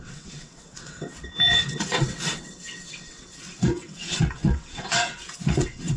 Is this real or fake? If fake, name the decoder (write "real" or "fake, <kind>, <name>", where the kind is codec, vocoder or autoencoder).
fake, vocoder, WaveNeXt